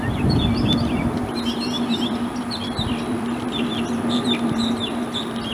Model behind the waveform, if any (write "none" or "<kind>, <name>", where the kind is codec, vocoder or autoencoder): vocoder, BigVGAN v2